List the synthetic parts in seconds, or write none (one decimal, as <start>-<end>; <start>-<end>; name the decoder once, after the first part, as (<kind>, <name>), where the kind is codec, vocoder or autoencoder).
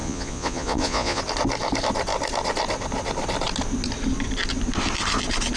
0.0-1.2 (vocoder, Vocos)